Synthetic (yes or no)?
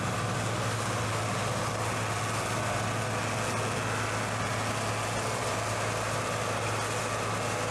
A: no